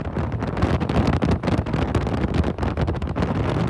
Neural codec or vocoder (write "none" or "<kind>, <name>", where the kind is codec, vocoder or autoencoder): none